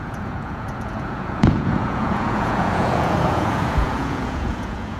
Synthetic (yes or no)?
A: yes